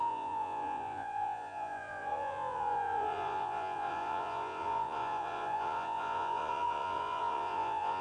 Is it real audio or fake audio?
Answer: fake